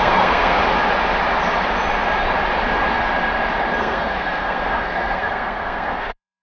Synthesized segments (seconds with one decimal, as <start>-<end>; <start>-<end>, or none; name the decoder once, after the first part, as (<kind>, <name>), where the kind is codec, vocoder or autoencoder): 0.0-0.6 (codec, SNAC); 3.8-6.4